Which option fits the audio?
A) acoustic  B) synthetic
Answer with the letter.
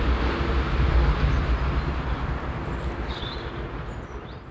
A